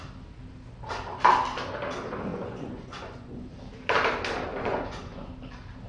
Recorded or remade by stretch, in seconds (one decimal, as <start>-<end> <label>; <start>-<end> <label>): 0.0-2.3 recorded; 2.3-3.5 remade; 3.5-4.5 recorded; 4.5-5.3 remade; 5.3-5.9 recorded